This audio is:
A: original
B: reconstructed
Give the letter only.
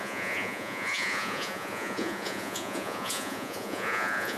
B